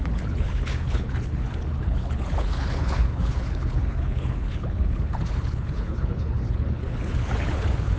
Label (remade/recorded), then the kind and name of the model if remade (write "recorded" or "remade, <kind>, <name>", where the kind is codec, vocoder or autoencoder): remade, codec, HILCodec